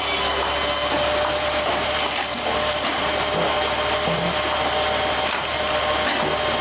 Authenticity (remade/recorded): recorded